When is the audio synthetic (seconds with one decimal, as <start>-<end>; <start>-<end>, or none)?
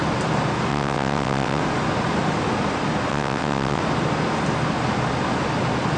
0.7-1.6; 3.1-3.8